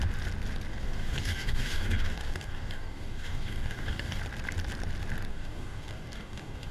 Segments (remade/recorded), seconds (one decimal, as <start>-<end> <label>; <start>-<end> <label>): 0.0-0.7 recorded; 0.7-4.2 remade; 4.2-5.3 recorded; 5.3-6.7 remade